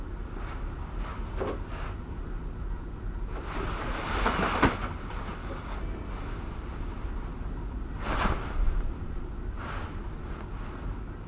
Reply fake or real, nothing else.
real